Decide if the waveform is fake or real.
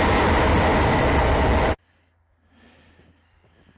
real